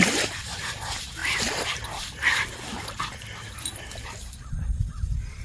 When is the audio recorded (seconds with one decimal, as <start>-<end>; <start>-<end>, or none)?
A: 0.0-5.4